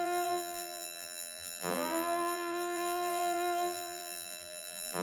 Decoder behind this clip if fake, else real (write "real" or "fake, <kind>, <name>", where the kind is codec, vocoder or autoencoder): fake, vocoder, BigVGAN v2